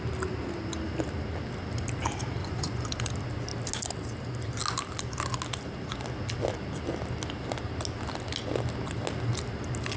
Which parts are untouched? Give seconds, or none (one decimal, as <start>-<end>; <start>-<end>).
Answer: 0.0-2.4; 3.1-10.0